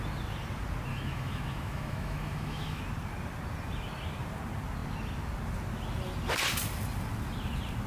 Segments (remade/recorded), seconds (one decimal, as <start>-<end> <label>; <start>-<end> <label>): 0.0-0.9 recorded; 0.9-2.8 remade; 2.8-7.9 recorded